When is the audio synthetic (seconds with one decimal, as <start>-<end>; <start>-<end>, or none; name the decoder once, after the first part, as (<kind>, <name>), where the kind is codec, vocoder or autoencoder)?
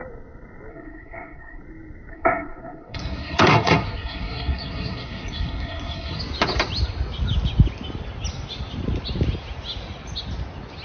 0.7-1.6 (codec, SNAC); 2.1-6.2